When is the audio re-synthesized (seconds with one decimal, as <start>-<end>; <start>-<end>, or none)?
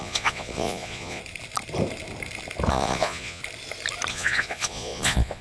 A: 0.0-1.2; 2.7-3.4; 4.1-5.4